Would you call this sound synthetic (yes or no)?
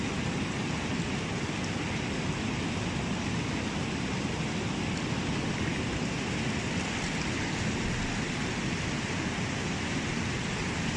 no